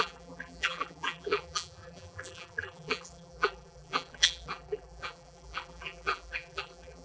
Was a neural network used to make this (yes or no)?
yes